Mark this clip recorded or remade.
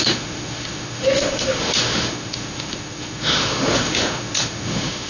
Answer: remade